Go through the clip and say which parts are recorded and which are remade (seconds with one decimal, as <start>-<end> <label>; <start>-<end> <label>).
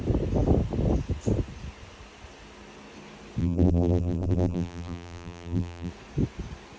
0.0-3.4 recorded; 3.4-5.9 remade; 5.9-6.8 recorded